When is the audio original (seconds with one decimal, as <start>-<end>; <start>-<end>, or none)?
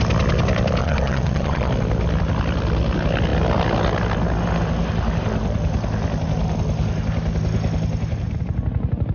0.0-0.8; 1.7-9.1